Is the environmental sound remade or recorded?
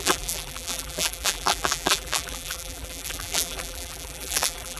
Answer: remade